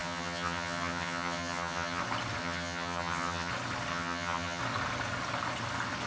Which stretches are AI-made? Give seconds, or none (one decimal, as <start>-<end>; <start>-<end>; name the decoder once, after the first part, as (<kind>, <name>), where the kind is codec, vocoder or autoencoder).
0.0-2.0 (vocoder, HiFi-GAN); 2.4-3.5; 3.9-4.6